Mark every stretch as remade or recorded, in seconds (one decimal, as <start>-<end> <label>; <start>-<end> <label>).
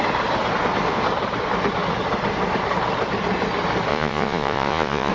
0.0-3.9 recorded; 3.9-5.1 remade